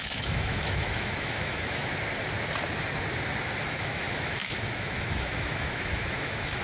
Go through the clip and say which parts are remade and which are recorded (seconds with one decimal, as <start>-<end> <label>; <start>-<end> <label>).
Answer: 0.0-1.8 remade; 1.8-3.6 recorded; 3.6-6.6 remade